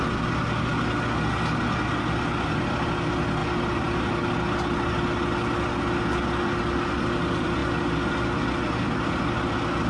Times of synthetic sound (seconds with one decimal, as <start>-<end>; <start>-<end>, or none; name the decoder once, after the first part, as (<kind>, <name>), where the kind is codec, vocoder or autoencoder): none